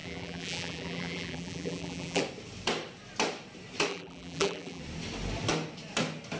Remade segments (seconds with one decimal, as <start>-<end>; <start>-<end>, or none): 0.0-2.2; 3.9-4.8